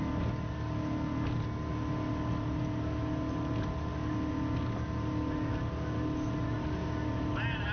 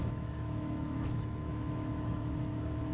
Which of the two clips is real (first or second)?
first